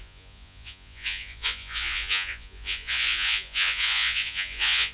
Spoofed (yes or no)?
yes